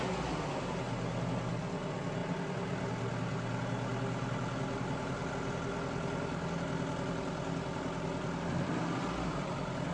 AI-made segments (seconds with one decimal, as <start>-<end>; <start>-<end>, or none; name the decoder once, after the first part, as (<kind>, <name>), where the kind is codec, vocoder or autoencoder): none

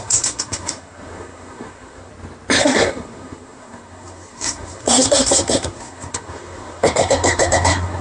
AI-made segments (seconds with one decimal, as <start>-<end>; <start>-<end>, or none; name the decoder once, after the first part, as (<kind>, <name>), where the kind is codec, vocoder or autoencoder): 0.0-2.1 (codec, SNAC); 2.6-8.0

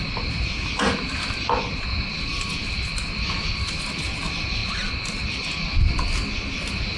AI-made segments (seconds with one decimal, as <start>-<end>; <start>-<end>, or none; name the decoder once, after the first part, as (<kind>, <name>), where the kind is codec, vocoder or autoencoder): none

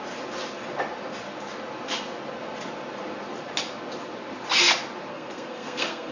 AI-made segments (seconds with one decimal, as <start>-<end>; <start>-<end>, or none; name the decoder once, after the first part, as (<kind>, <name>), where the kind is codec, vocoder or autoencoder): 5.1-6.1 (codec, SNAC)

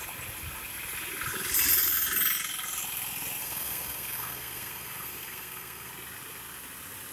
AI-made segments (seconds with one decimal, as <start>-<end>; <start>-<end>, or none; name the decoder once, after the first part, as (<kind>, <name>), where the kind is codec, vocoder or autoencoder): 3.4-5.9 (codec, SNAC)